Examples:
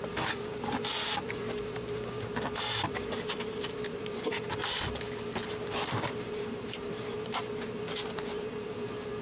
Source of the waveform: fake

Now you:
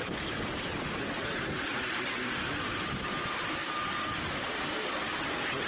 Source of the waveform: fake